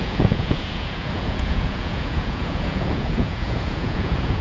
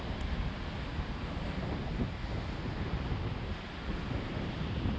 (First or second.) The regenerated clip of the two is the first